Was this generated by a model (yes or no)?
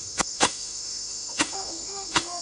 yes